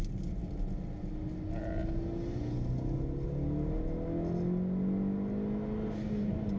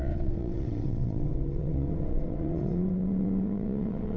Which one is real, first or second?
first